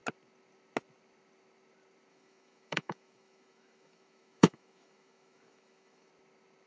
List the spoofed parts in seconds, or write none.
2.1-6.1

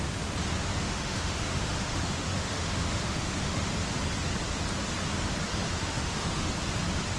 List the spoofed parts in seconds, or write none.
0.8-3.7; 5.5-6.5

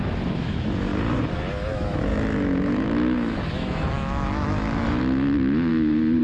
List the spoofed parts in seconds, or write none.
0.0-0.9; 1.7-5.7